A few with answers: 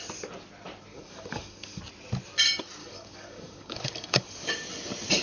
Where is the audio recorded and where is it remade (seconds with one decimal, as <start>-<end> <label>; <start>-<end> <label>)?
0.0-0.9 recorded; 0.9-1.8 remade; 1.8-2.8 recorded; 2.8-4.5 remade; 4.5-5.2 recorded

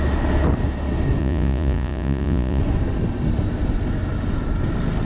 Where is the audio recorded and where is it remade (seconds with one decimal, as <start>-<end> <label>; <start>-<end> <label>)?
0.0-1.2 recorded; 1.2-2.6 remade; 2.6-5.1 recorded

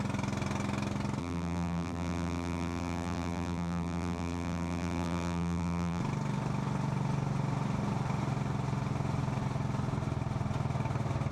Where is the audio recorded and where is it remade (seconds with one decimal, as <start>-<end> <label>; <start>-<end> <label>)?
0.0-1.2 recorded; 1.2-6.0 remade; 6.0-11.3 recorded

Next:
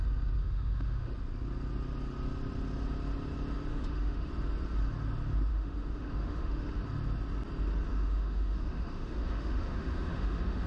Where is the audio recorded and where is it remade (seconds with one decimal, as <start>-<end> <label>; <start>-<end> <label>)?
0.0-0.4 recorded; 0.4-1.1 remade; 1.1-3.7 recorded; 3.7-4.3 remade; 4.3-5.5 recorded; 5.5-6.8 remade; 6.8-7.9 recorded; 7.9-10.7 remade

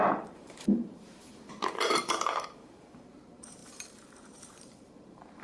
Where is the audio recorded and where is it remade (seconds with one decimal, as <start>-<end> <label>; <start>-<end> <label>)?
0.0-5.4 remade